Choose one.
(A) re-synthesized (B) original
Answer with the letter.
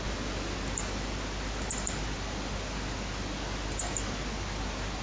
B